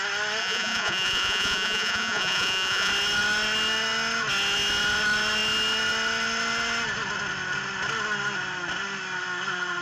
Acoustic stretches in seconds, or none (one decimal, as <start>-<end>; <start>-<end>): 0.0-0.4; 2.9-9.8